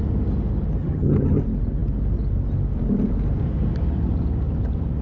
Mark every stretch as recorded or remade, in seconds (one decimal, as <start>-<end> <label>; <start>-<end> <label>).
0.0-0.8 recorded; 0.8-1.4 remade; 1.4-5.0 recorded